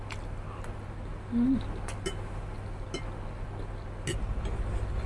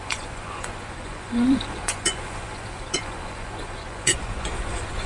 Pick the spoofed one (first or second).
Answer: second